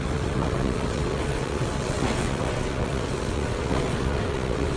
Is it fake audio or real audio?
fake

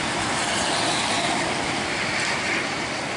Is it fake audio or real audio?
real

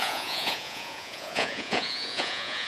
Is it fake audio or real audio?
fake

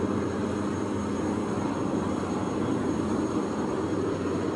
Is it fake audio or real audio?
real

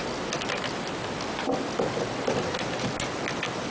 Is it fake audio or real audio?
real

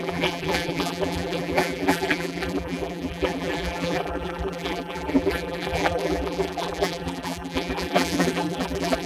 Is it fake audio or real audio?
fake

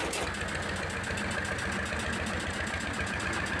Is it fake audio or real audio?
real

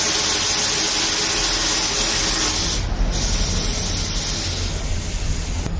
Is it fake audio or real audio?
real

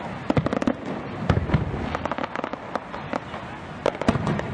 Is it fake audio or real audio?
real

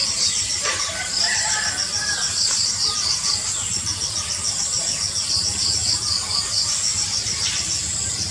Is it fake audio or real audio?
real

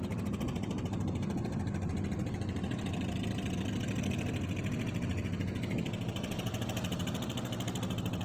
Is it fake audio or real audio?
real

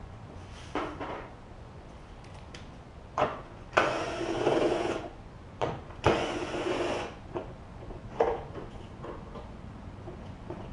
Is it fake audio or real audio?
fake